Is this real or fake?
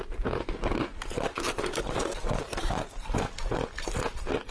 real